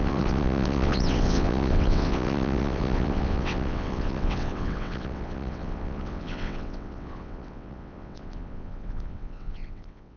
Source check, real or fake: fake